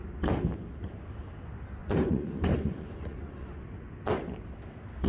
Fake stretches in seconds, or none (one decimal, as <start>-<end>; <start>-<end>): 1.8-3.6